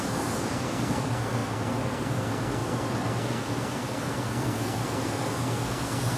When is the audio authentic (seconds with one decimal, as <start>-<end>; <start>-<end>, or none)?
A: none